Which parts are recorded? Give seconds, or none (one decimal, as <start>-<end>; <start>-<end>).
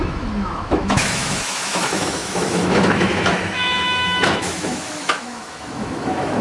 none